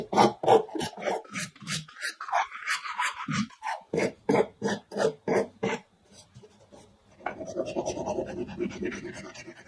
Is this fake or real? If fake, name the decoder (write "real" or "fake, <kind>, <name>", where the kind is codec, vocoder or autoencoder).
fake, vocoder, BigVGAN v2